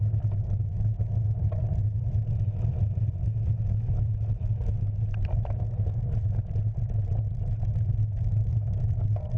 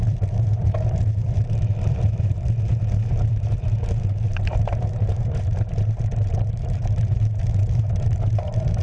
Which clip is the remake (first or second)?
second